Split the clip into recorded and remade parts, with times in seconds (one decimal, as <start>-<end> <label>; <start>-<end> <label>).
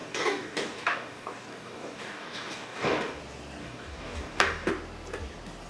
0.0-3.2 remade; 3.2-3.6 recorded; 3.6-4.7 remade; 4.7-5.7 recorded